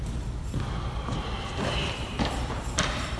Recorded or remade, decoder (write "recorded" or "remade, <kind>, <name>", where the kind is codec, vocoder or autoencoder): remade, vocoder, BigVGAN v2